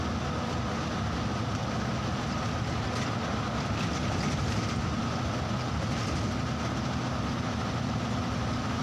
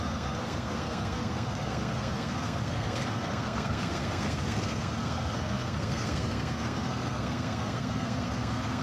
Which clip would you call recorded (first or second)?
first